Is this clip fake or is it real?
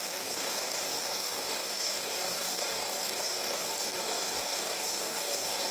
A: fake